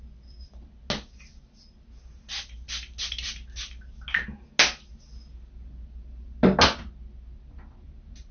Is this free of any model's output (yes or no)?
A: yes